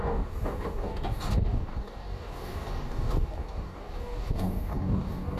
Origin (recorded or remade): remade